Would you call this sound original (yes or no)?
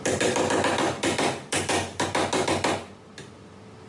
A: yes